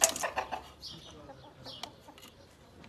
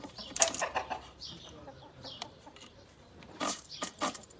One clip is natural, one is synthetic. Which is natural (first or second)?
first